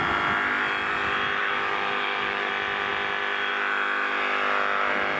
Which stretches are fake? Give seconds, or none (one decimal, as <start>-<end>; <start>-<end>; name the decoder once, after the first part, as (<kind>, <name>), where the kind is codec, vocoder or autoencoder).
1.4-2.5 (codec, DAC)

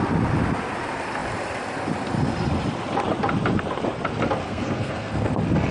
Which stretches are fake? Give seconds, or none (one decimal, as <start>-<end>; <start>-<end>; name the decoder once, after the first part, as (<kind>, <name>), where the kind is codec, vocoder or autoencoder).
4.4-5.3 (codec, SNAC)

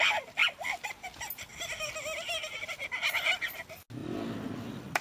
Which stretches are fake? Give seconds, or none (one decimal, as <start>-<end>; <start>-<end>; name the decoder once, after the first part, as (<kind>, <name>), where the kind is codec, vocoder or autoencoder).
4.0-5.0 (vocoder, BigVGAN v2)

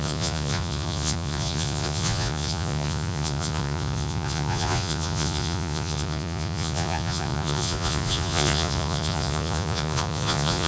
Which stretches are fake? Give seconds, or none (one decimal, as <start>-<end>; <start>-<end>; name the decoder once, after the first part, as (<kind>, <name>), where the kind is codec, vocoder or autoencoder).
0.0-10.7 (vocoder, Vocos)

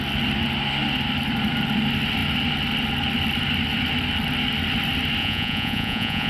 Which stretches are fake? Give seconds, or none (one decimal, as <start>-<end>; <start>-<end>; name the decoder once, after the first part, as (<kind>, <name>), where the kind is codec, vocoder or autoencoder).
5.2-6.3 (vocoder, Vocos)